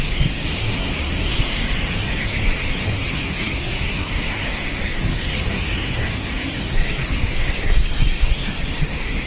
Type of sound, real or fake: fake